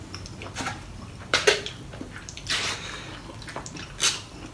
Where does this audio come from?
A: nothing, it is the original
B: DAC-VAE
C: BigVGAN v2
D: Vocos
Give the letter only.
C